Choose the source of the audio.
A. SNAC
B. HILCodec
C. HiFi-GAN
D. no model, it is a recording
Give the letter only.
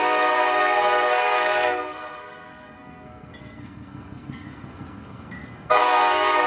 A